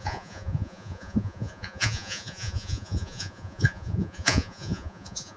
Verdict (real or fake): fake